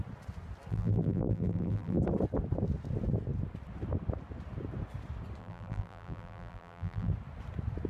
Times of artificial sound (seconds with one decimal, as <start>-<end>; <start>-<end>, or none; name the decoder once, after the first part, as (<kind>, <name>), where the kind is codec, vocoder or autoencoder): 0.7-2.0 (vocoder, BigVGAN v2); 5.4-7.1